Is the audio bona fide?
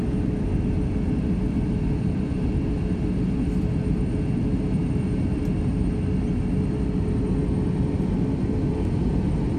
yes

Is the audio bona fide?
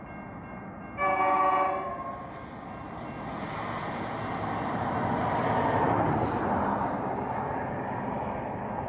yes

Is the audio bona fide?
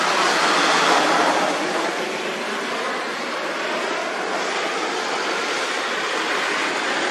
yes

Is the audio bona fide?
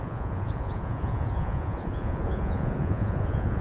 no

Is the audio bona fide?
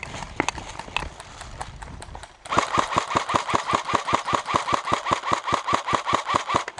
yes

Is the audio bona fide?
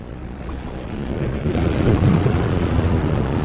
no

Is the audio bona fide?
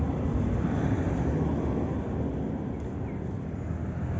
yes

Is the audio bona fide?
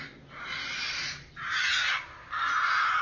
yes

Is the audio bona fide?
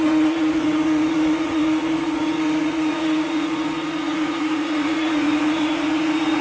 no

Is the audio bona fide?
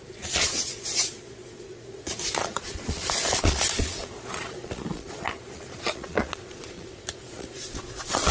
no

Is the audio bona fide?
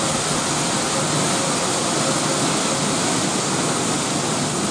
yes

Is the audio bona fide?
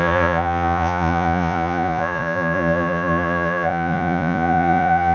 no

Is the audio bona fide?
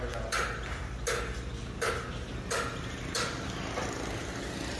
yes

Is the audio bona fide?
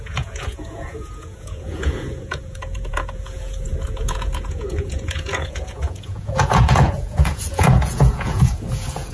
no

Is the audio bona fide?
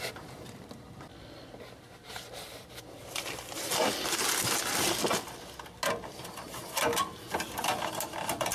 yes